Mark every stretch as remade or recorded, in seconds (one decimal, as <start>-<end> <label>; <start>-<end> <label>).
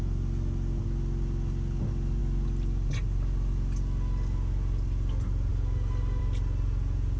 0.0-7.2 recorded